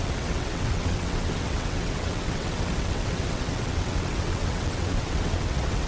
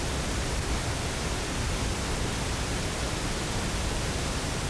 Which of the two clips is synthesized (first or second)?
first